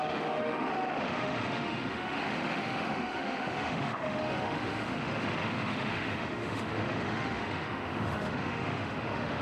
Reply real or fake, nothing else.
fake